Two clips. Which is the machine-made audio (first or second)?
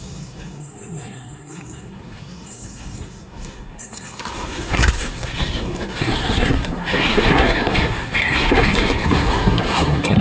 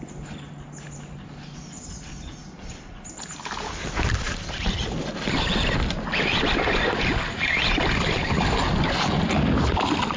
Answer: first